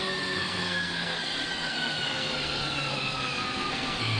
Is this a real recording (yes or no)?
no